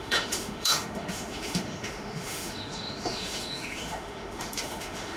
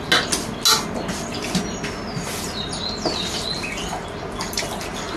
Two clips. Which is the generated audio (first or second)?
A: first